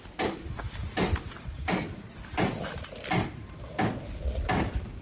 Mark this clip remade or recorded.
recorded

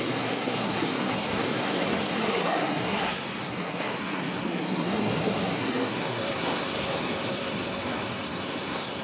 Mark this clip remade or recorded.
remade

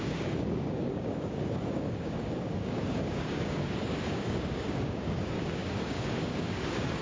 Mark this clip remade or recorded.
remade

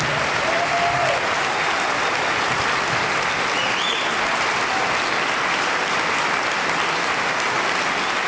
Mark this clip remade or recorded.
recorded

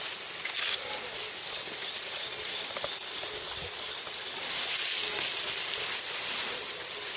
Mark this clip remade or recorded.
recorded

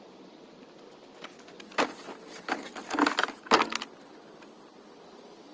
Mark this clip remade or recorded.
recorded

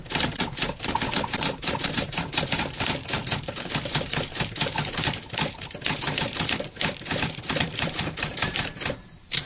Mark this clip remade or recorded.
remade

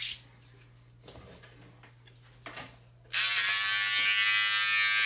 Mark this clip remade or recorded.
recorded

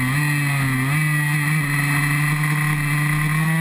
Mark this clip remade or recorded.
recorded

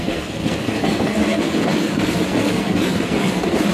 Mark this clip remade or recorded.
remade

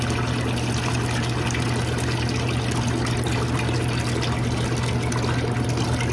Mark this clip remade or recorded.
recorded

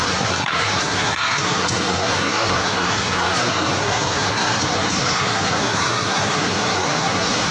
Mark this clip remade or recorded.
remade